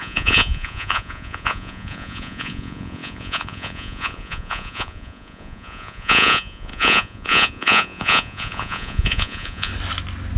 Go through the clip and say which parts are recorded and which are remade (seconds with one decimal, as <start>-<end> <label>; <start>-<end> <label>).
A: 0.0-9.7 remade; 9.7-10.4 recorded